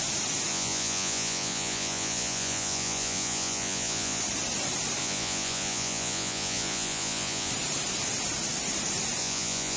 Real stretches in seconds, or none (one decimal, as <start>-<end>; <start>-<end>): 0.0-0.5; 4.2-5.0; 7.5-9.2